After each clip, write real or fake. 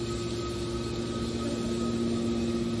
real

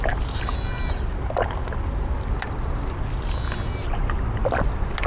real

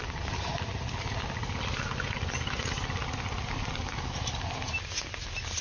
real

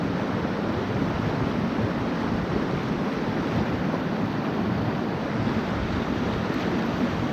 real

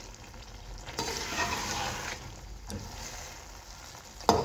real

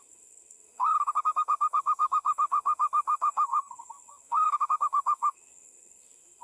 fake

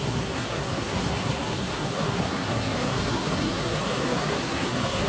fake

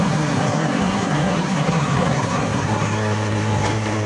fake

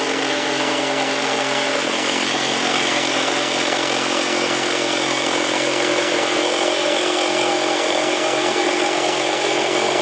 fake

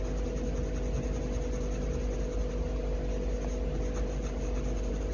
real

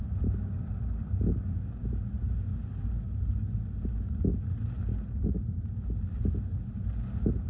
real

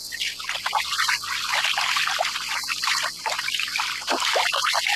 real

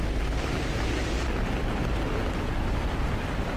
real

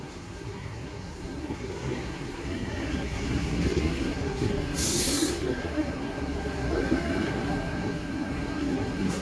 fake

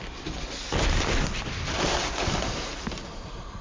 real